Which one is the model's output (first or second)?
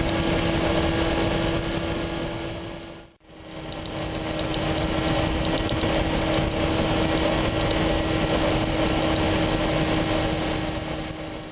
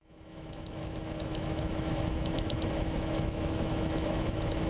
second